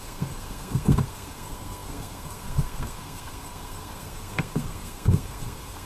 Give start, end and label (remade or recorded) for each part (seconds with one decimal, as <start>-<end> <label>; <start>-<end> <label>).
0.0-5.9 remade